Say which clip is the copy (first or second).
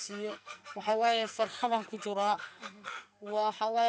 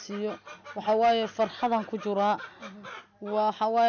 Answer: first